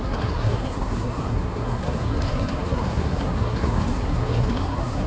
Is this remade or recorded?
remade